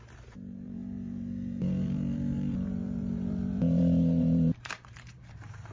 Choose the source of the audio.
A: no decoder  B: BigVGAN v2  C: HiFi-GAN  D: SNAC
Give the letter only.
B